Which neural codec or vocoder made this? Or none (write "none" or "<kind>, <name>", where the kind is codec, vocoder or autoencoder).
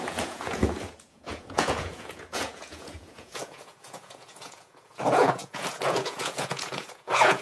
vocoder, Vocos